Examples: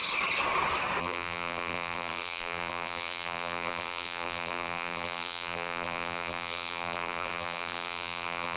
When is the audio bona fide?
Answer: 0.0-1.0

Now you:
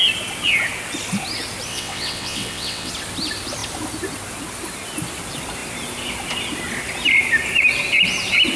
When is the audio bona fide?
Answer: 0.0-1.7; 2.9-8.6

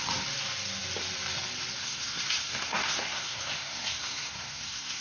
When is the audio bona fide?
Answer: 0.0-1.8

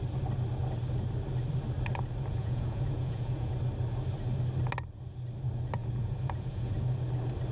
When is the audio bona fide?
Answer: 0.0-2.3; 3.5-5.8; 6.7-7.5

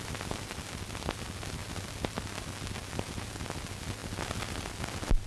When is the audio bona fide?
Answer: 0.0-5.3